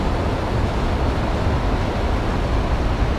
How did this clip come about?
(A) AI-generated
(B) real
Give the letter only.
B